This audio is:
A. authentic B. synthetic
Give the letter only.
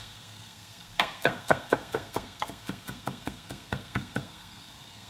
B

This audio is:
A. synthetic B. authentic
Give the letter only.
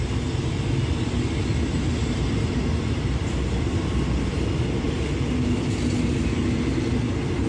B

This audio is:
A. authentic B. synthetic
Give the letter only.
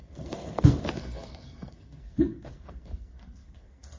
B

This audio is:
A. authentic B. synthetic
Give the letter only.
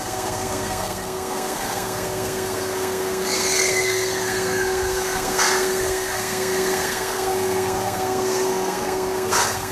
B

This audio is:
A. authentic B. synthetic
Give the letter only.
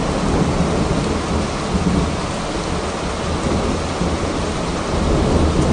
A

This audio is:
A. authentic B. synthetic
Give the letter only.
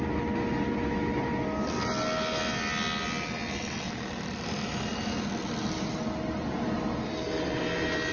A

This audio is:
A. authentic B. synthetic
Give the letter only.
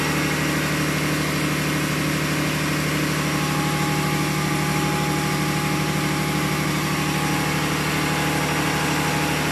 A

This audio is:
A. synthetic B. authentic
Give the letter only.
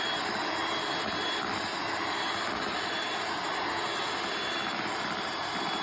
B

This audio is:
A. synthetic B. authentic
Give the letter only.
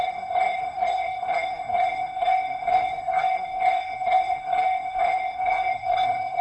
A